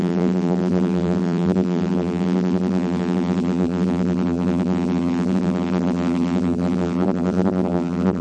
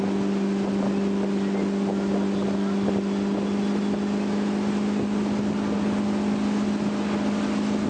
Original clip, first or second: second